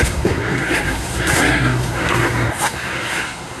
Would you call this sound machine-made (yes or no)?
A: yes